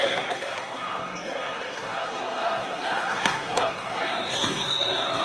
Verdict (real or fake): fake